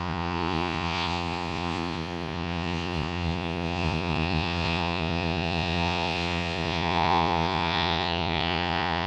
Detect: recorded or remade remade